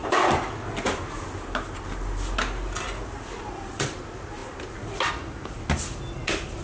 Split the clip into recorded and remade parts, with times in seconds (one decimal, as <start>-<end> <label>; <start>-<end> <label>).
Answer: 0.0-6.6 recorded